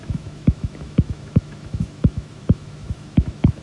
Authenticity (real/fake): fake